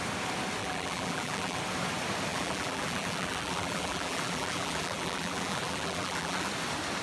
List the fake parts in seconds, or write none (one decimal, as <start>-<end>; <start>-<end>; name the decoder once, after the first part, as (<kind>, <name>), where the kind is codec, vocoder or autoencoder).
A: 0.6-1.6 (vocoder, BigVGAN v2); 2.3-6.5